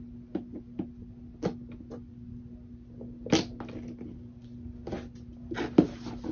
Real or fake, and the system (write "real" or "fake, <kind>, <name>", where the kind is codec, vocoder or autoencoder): real